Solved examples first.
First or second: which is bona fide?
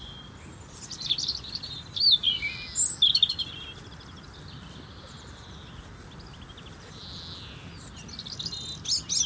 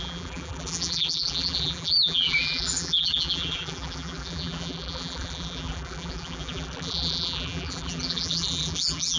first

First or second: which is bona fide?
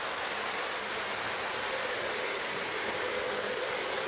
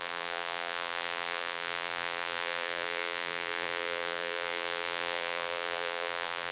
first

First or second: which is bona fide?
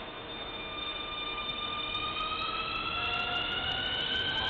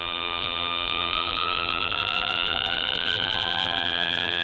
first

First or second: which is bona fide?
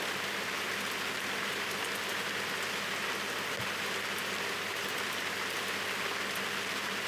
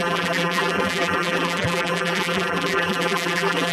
first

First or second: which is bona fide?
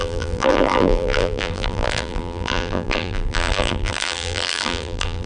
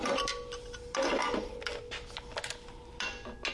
second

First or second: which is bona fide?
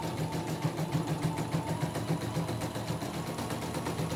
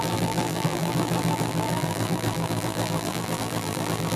first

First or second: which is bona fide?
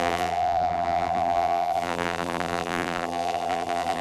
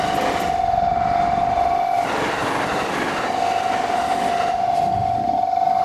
second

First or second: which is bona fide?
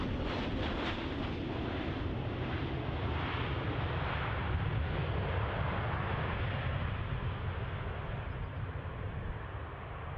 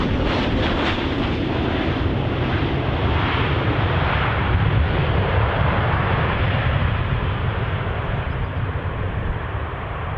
first